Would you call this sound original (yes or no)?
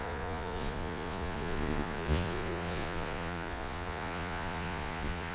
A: no